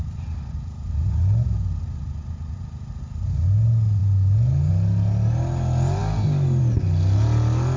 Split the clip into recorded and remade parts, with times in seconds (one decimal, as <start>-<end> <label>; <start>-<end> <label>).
0.0-7.8 recorded